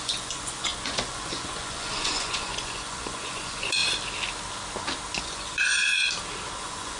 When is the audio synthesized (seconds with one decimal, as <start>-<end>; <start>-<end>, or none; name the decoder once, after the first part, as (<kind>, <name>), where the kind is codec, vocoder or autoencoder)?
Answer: 0.0-3.8 (vocoder, Vocos); 5.2-5.9; 6.6-7.0